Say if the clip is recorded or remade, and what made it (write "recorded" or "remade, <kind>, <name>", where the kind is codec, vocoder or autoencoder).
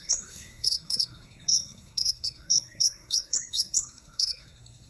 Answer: remade, codec, SNAC